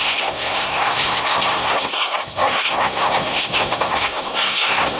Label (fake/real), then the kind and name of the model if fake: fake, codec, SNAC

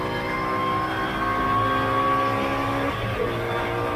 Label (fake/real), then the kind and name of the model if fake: real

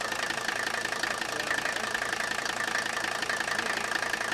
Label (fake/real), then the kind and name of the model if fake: real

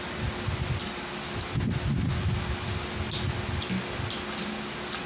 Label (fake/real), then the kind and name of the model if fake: real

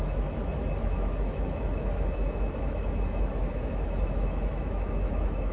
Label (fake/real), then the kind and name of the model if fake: fake, autoencoder, DAC-VAE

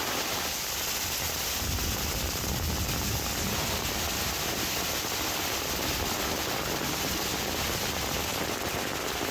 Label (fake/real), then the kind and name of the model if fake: real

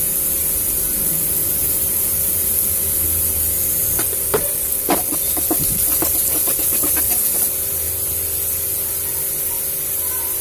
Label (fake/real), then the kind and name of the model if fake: real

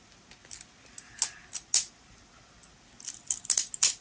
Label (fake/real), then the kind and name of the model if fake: real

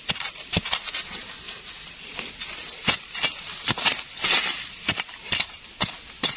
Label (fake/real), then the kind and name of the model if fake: real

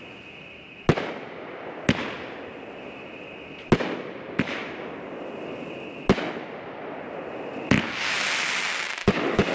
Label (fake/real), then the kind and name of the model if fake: real